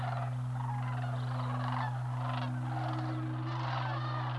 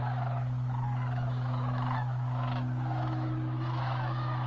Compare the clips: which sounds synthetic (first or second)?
second